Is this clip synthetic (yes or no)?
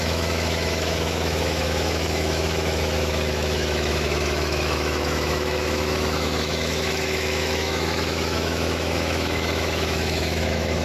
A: yes